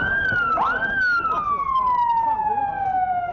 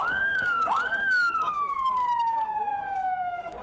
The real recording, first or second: first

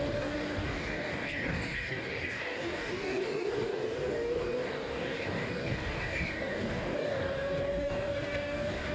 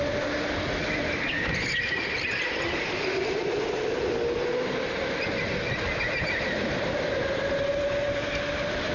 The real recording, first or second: second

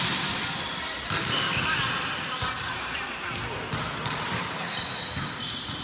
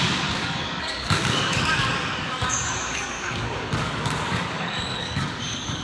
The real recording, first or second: first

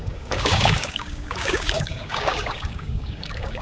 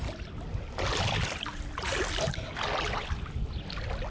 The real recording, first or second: second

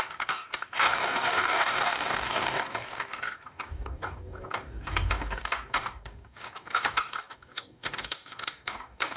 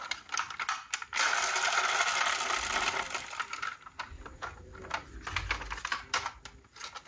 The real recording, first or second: second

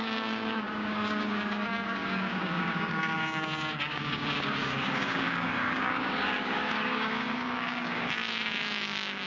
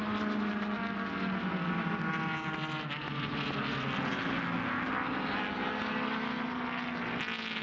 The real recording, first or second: second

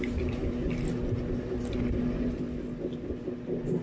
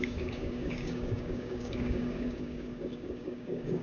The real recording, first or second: first